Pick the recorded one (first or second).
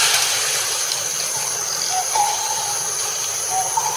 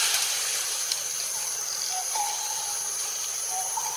first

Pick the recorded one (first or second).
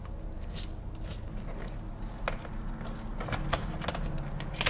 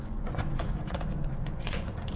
first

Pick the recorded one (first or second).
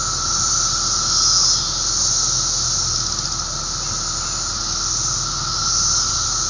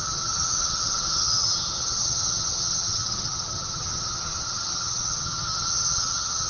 first